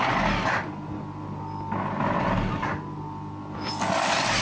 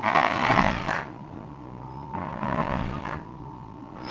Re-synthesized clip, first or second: second